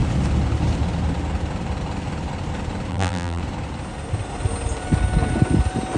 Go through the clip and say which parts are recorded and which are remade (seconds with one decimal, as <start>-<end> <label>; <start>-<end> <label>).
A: 0.0-2.9 recorded; 2.9-3.4 remade; 3.4-6.0 recorded